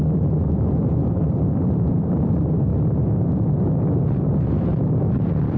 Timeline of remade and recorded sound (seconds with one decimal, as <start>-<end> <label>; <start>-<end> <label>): 0.0-0.8 recorded; 0.8-2.3 remade; 2.3-5.6 recorded